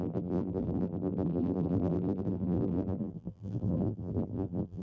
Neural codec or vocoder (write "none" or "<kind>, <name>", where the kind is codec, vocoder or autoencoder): vocoder, BigVGAN v2